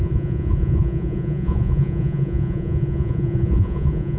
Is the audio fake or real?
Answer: fake